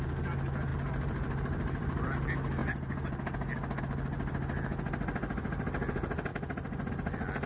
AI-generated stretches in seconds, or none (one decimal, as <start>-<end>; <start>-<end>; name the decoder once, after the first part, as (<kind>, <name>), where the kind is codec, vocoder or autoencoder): 0.7-2.1 (vocoder, BigVGAN v2); 2.6-3.8; 6.3-6.9